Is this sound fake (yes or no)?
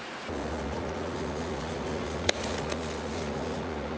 yes